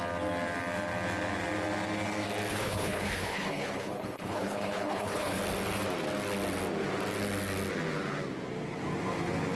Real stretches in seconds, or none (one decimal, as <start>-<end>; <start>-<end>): 0.0-2.5; 5.4-9.6